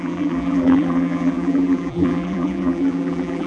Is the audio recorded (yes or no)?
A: no